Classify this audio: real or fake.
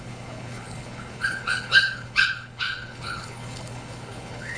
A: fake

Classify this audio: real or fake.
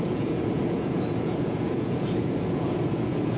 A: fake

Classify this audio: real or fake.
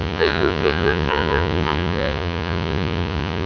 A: fake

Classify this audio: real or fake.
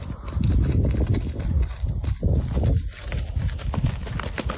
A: real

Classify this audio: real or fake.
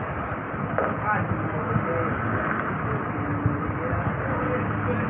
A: real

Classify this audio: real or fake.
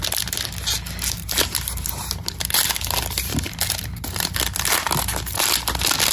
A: real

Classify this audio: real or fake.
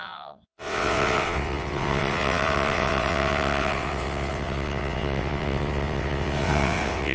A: fake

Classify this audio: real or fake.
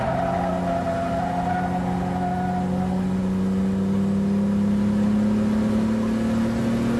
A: real